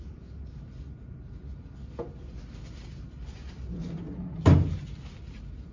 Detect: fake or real real